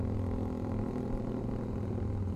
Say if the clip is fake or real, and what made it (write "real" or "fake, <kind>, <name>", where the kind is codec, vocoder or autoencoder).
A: real